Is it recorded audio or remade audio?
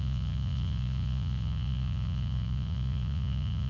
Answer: remade